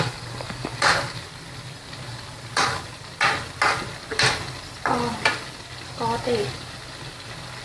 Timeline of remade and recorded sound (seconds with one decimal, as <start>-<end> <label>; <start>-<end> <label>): 0.0-7.6 recorded